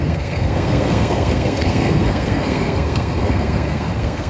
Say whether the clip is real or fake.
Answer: fake